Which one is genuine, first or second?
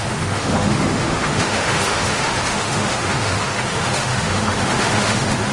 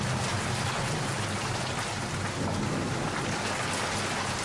second